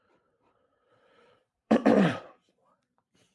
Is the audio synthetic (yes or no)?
yes